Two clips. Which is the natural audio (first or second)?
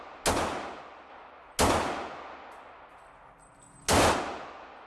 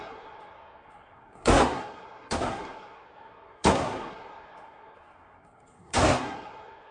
first